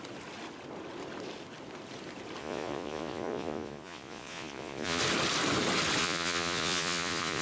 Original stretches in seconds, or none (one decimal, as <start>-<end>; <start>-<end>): 0.0-2.4; 5.0-6.0